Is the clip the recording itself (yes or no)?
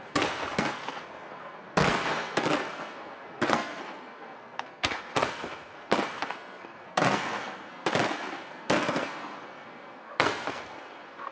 no